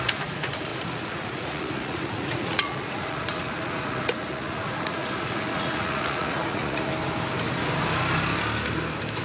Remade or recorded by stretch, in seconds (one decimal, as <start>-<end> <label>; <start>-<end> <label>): 0.0-6.9 remade; 6.9-9.2 recorded